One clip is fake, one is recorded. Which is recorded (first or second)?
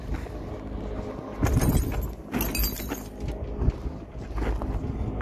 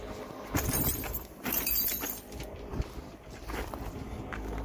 first